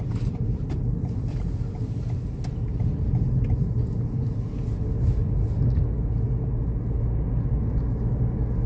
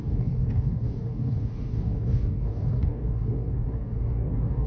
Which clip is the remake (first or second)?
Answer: second